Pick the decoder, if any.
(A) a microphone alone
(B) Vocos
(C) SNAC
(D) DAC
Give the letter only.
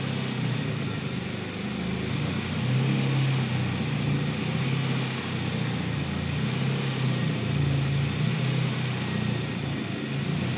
A